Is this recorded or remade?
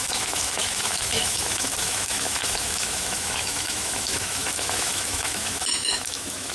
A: remade